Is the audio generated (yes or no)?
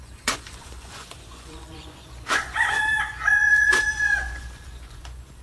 yes